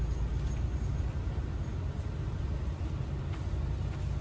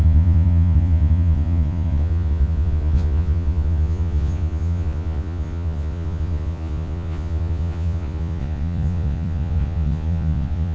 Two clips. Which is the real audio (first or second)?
first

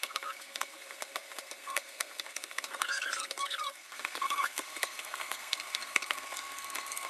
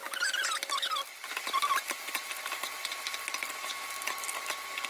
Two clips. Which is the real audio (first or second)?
second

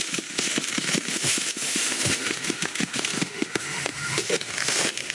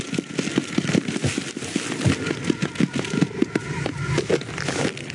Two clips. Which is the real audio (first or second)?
second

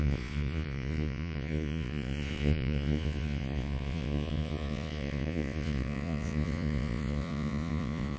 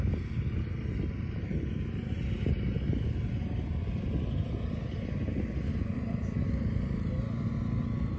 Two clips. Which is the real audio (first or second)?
second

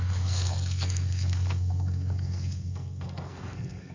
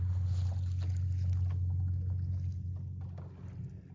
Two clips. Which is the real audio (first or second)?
second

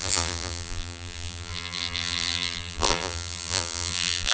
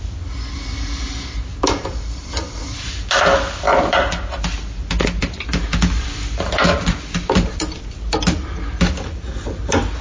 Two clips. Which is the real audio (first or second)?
second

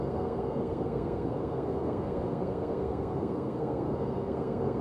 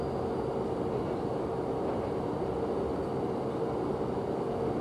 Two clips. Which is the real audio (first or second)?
second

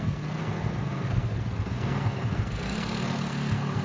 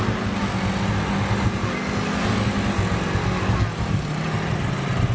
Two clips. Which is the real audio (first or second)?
second